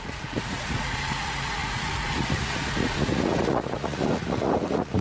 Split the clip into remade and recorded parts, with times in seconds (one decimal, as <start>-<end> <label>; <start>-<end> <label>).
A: 0.0-5.0 remade